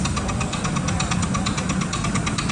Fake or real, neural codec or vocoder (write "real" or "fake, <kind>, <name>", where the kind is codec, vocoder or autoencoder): real